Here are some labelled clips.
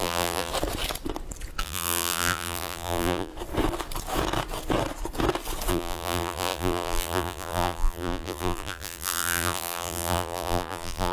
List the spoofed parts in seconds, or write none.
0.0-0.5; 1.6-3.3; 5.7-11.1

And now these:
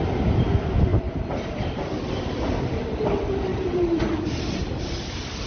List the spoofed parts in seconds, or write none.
0.9-3.1; 3.5-4.0

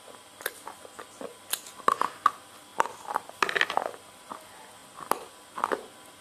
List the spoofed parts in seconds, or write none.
none

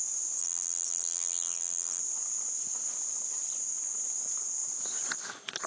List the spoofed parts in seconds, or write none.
0.4-2.0

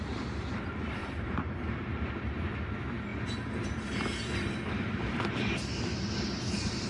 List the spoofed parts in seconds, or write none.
1.0-2.5

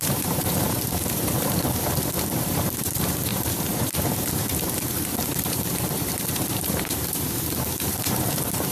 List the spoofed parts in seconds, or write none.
0.0-8.7